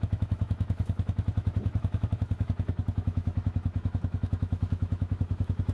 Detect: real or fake fake